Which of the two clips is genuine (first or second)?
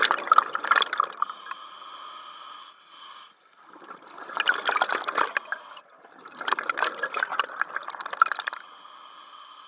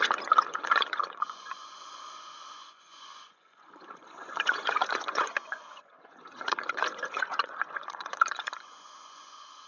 first